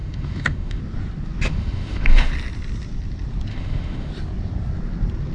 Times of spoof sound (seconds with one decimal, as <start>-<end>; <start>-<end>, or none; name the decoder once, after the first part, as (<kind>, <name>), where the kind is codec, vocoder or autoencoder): 0.0-0.8 (autoencoder, DAC-VAE); 1.5-2.3; 3.5-4.1